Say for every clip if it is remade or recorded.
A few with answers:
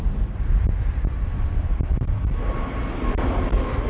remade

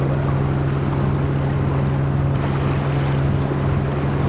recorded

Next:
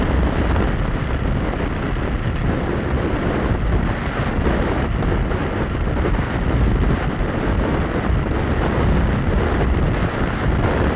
recorded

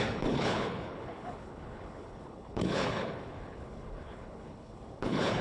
remade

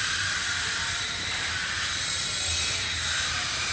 recorded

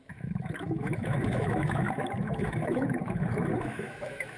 remade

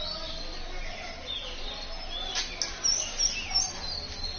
recorded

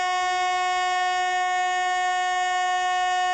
recorded